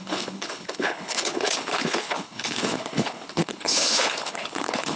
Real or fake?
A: fake